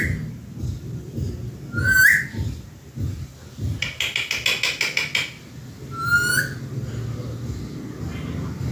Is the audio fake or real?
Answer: real